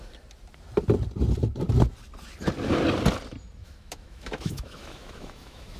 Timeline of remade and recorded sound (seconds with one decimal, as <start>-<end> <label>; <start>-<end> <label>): 0.0-3.6 recorded; 3.6-5.8 remade